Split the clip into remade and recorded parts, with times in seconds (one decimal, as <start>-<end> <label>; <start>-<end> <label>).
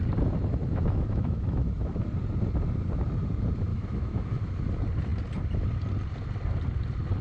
0.0-0.5 recorded; 0.5-1.7 remade; 1.7-3.7 recorded; 3.7-4.6 remade; 4.6-7.2 recorded